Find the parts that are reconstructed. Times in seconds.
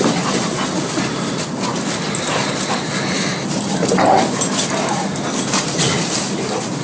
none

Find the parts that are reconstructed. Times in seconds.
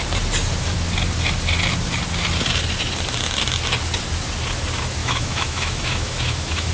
5.0-6.7 (autoencoder, DAC-VAE)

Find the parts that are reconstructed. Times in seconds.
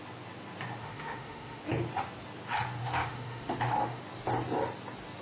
0.8-1.6 (autoencoder, DAC-VAE); 2.8-4.0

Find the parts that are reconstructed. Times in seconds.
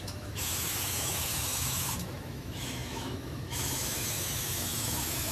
0.0-5.3 (autoencoder, DAC-VAE)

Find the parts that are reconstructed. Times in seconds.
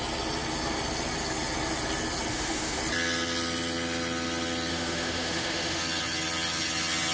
2.3-2.8 (autoencoder, DAC-VAE); 4.7-5.8